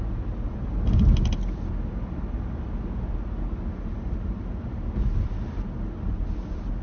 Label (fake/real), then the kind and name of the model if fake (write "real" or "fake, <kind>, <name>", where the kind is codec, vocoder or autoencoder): real